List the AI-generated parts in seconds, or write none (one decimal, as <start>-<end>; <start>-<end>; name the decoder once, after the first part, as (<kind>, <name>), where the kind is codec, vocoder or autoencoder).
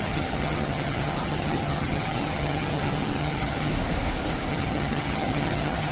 0.0-3.7 (vocoder, HiFi-GAN); 4.5-5.9